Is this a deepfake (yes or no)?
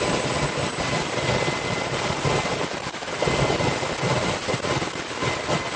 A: no